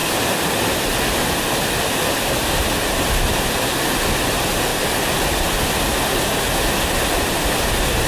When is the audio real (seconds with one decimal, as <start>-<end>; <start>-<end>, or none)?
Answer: 0.0-8.1